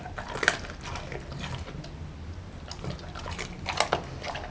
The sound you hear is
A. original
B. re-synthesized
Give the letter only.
A